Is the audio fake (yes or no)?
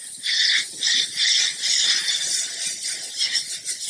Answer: no